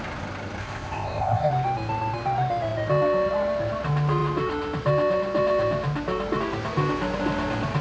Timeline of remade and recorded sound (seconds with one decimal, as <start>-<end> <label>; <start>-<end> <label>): 0.0-0.6 recorded; 0.6-1.5 remade; 1.5-7.8 recorded